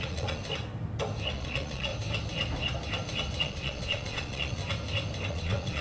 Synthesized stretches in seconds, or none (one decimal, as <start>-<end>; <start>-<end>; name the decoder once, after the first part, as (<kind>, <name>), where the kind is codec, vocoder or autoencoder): 0.0-0.4 (vocoder, Vocos); 1.3-1.9; 3.4-4.6; 5.3-5.8